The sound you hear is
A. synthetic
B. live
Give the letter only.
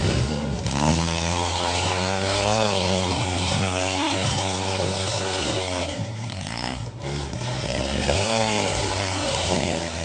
A